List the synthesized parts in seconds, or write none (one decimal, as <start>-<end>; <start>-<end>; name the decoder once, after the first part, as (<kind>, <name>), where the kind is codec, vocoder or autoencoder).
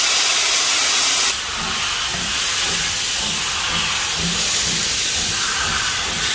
2.1-2.9 (vocoder, BigVGAN v2)